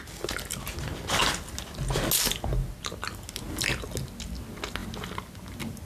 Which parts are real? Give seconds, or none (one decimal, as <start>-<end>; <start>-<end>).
0.0-5.9